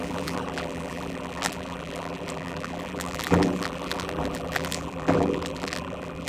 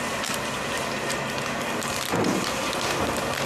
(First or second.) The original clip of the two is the second